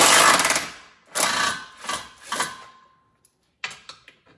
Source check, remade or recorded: recorded